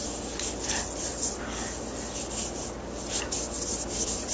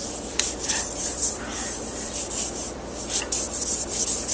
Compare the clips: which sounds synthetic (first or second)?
second